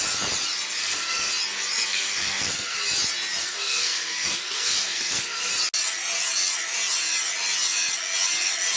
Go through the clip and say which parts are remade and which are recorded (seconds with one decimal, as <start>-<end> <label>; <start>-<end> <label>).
0.0-0.8 recorded; 0.8-1.3 remade; 1.3-1.9 recorded; 1.9-2.8 remade; 2.8-3.4 recorded; 3.4-5.5 remade; 5.5-8.8 recorded